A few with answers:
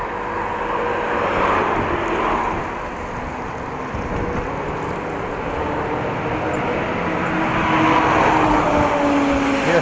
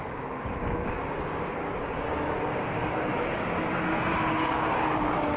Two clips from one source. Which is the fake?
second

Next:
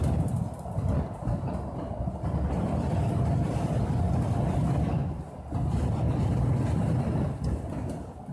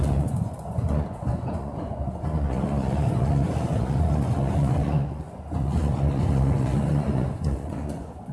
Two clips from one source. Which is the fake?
second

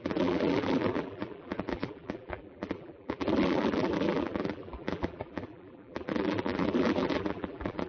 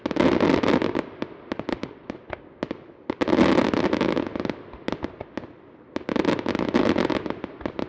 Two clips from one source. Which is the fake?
first